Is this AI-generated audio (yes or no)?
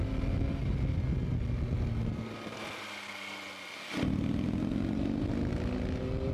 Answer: no